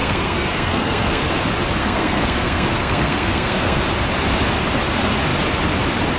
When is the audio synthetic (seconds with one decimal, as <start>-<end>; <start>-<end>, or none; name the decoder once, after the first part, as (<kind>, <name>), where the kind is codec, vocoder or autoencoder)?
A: 0.0-1.3 (codec, SNAC); 1.8-3.8